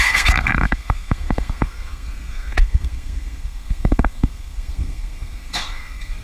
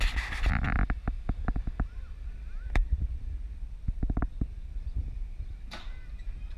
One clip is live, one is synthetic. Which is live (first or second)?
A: second